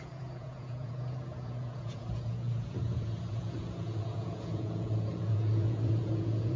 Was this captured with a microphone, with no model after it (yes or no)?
no